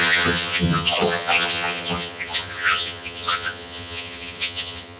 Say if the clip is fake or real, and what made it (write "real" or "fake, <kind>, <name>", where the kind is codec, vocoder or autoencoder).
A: fake, vocoder, HiFi-GAN